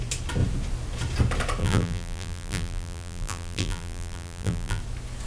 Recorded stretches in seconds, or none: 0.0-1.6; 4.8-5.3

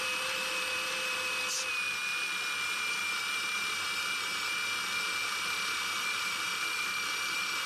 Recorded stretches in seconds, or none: 0.0-5.2; 7.1-7.7

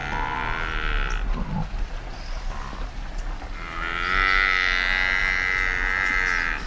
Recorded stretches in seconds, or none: 0.0-6.7

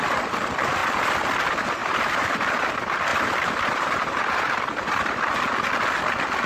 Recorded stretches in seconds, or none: 0.0-1.8; 2.7-3.1; 5.0-6.5

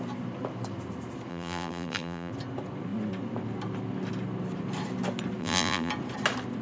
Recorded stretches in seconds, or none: 0.0-1.3; 2.3-5.4; 5.9-6.6